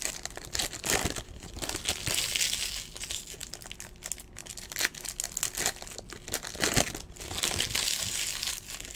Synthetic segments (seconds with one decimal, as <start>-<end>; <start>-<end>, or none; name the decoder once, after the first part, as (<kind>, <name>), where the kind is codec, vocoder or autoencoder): none